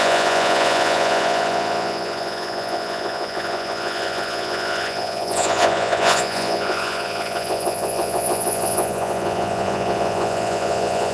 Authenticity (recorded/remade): remade